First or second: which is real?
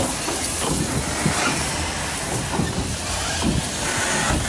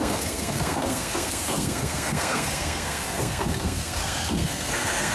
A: first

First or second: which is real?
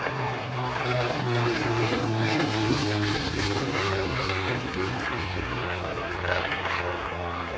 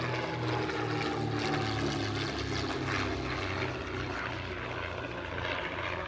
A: second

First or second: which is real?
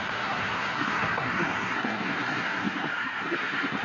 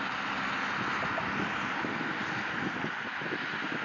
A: second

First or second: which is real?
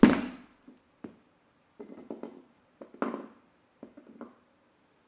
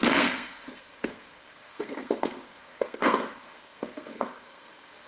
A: first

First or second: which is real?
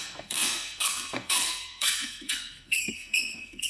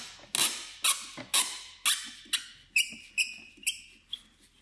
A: second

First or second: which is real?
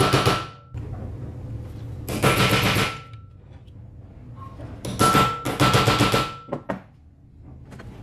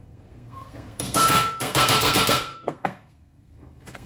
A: first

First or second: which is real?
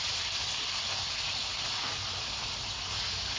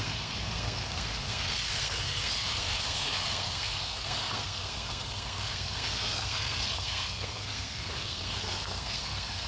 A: first